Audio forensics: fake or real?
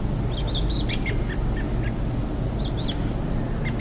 real